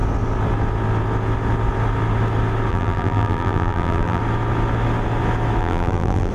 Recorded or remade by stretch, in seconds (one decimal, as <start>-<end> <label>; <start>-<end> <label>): 0.0-2.7 recorded; 2.7-4.2 remade; 4.2-5.6 recorded; 5.6-6.3 remade